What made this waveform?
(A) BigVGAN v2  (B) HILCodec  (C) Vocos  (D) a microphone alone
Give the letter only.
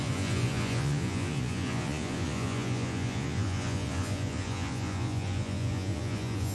C